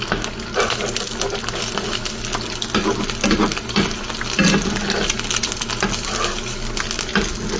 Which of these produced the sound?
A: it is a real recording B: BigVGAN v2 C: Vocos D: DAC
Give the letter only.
A